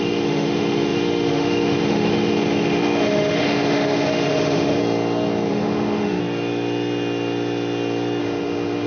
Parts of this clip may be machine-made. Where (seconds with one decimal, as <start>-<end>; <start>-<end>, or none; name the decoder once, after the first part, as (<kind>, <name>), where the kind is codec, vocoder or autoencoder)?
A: 0.0-4.8 (autoencoder, DAC-VAE); 5.5-6.2; 8.2-8.9